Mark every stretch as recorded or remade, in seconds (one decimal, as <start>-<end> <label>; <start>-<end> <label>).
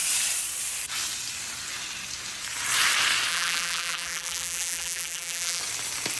0.0-3.3 recorded; 3.3-5.6 remade; 5.6-6.2 recorded